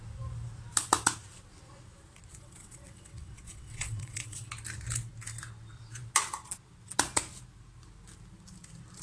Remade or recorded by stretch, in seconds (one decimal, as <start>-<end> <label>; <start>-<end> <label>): 0.0-2.3 recorded; 2.3-4.5 remade; 4.5-9.0 recorded